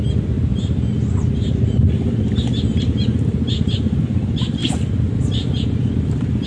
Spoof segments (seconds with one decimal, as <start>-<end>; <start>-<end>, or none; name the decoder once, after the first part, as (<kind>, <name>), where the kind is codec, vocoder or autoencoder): none